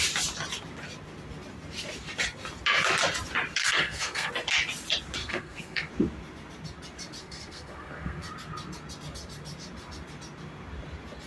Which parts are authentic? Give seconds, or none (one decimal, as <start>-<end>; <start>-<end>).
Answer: 0.0-3.6; 4.3-5.2; 5.9-7.2; 8.3-11.3